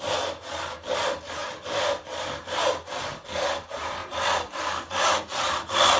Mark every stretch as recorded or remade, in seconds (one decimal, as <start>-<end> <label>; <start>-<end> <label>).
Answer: 0.0-6.0 recorded